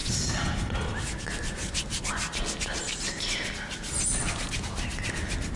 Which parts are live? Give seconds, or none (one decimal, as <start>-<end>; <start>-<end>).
0.0-5.6